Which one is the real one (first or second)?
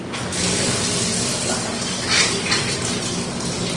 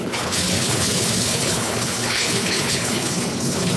first